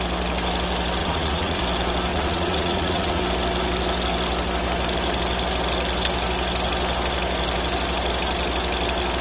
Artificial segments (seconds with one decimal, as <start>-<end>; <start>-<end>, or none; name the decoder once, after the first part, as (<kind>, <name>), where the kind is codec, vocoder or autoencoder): 1.0-1.6 (vocoder, Vocos); 2.1-3.2